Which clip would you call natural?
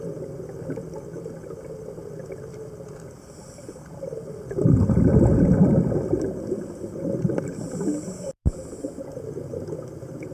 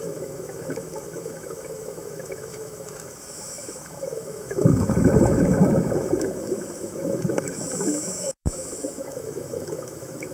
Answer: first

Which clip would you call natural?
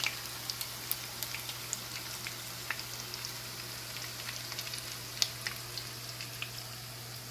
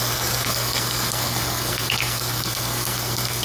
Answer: first